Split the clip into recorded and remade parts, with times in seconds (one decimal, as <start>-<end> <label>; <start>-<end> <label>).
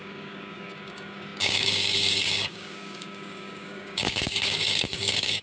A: 0.0-5.4 remade